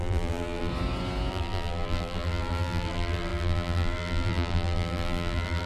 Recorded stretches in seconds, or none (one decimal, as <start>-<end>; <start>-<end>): 0.7-1.3